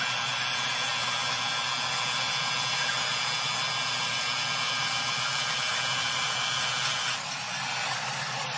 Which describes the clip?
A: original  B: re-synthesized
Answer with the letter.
A